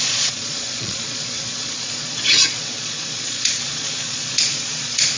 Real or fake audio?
fake